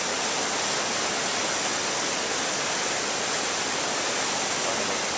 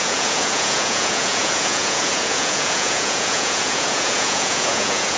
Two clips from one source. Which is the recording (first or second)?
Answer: first